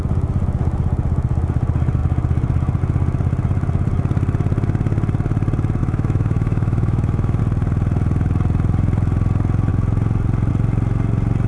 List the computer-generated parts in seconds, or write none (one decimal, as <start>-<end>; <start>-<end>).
5.8-7.4